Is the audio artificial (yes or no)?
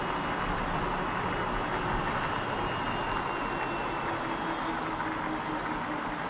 no